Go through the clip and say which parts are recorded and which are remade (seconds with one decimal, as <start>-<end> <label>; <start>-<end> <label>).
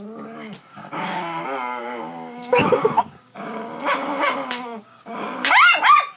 0.0-0.7 recorded; 0.7-1.4 remade; 1.4-1.8 recorded; 1.8-5.5 remade; 5.5-6.2 recorded